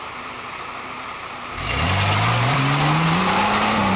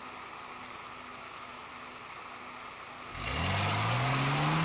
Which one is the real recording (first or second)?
second